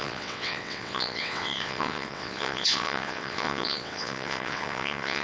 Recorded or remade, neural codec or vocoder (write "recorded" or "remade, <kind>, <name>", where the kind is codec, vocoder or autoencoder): remade, vocoder, WaveNeXt